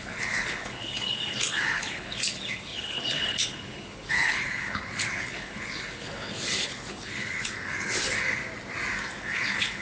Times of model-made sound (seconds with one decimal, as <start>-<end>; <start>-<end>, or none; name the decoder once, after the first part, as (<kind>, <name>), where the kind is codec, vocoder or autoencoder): 0.0-8.4 (codec, HILCodec); 9.2-9.8

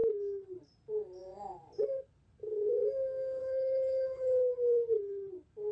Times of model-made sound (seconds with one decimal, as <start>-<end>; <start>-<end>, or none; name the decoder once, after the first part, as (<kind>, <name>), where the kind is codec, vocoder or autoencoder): 0.0-0.6 (codec, HILCodec); 3.4-5.3